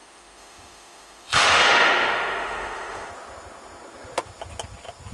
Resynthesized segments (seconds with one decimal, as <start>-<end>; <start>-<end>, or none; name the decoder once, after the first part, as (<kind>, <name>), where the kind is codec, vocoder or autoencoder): 0.0-3.1 (autoencoder, DAC-VAE)